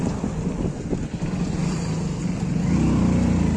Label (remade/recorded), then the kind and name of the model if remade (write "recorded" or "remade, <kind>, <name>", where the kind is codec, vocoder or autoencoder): recorded